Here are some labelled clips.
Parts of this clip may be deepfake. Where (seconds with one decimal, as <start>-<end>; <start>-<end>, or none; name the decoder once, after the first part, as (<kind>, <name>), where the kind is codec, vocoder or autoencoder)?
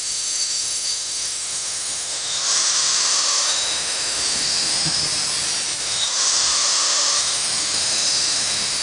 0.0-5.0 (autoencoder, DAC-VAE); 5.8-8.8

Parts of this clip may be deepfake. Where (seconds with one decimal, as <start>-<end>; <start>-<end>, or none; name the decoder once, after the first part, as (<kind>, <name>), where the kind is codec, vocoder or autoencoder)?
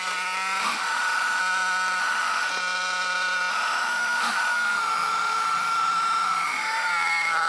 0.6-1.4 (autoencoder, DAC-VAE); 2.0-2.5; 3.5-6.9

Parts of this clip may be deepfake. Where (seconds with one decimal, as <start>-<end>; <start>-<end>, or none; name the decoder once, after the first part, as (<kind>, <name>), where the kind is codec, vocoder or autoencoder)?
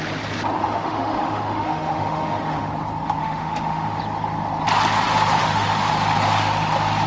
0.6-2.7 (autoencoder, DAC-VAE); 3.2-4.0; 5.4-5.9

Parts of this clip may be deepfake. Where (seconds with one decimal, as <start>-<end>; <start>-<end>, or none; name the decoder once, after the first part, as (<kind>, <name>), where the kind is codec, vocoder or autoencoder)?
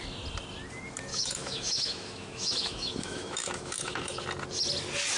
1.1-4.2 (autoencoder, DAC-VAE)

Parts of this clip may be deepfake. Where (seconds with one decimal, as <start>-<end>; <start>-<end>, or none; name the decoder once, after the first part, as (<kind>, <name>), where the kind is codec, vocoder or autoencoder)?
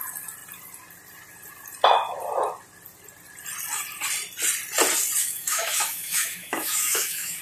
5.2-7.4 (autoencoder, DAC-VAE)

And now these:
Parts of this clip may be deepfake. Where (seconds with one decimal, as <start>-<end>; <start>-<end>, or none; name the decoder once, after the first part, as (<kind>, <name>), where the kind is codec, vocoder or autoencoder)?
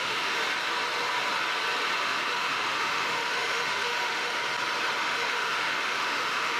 0.0-0.4 (autoencoder, DAC-VAE); 2.0-4.4; 5.0-6.6